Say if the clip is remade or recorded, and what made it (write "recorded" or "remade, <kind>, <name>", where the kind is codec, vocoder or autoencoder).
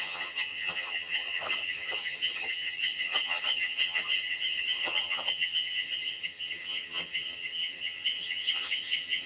remade, vocoder, HiFi-GAN